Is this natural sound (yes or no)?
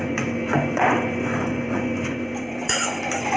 no